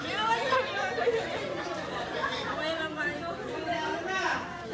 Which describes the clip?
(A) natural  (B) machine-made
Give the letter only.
B